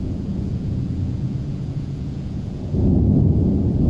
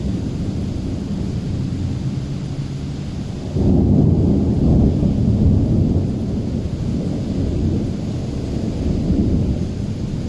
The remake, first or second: first